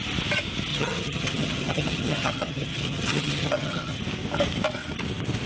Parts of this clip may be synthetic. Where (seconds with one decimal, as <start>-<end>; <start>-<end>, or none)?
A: 0.7-4.0